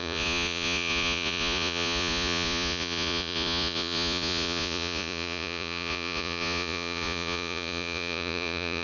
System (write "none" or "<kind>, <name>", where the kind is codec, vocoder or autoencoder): vocoder, Vocos